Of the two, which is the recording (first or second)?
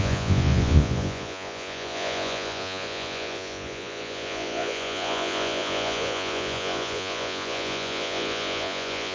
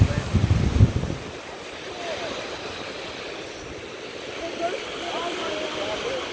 second